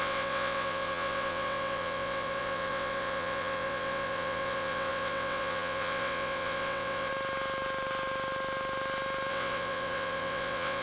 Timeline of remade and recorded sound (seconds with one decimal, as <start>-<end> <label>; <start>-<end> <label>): 0.0-7.1 remade; 7.1-9.3 recorded; 9.3-10.8 remade